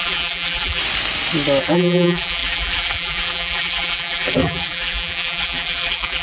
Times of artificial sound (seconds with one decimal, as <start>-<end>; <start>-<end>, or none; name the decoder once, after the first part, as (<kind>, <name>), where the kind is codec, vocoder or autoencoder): 0.0-0.8 (vocoder, BigVGAN v2); 1.6-6.2